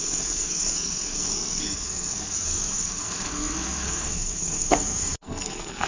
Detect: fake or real fake